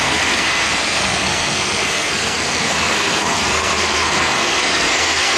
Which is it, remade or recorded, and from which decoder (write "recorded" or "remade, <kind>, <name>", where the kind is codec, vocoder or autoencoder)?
remade, codec, SNAC